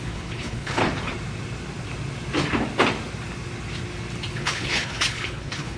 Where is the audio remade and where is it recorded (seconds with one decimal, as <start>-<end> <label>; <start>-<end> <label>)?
0.0-0.8 remade; 0.8-4.3 recorded; 4.3-5.8 remade